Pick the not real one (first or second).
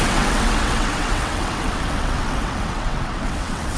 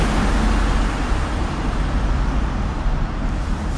first